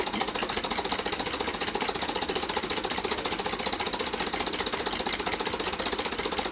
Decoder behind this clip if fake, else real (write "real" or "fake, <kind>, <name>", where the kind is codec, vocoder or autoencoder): real